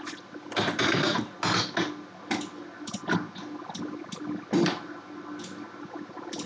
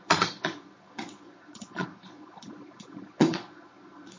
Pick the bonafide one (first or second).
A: first